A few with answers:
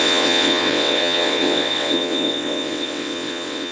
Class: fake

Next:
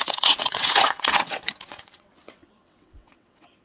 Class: fake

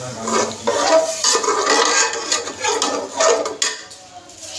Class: real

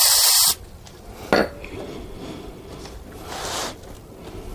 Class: real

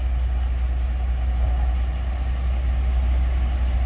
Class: real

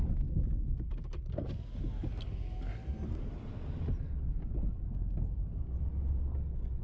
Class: real